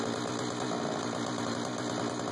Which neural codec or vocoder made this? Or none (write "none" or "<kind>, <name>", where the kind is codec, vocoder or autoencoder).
none